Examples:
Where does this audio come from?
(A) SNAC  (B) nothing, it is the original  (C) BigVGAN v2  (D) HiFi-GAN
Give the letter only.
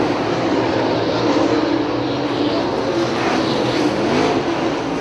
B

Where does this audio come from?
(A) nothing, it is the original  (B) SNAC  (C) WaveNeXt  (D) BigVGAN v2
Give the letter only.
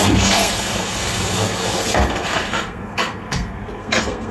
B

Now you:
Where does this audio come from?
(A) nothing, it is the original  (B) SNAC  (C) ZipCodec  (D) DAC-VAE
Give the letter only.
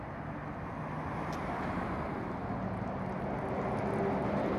A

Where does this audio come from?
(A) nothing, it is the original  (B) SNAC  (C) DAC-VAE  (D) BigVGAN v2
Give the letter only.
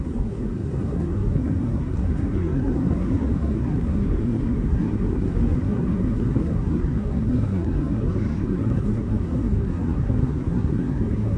B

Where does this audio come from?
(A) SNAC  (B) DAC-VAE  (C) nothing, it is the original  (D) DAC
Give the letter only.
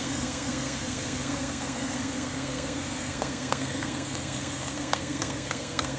A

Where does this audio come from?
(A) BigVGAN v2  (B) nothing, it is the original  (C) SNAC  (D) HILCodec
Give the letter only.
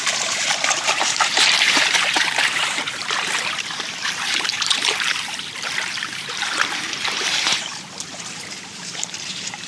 A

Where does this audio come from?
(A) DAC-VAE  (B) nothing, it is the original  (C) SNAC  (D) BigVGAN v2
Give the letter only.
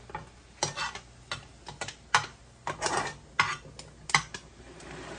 B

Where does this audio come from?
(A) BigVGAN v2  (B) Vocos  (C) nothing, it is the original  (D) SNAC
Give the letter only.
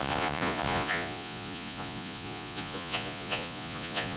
B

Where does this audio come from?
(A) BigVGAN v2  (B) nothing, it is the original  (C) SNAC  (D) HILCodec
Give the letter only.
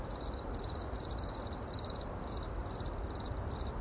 B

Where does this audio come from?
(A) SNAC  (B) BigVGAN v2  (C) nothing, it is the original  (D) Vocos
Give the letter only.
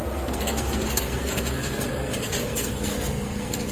A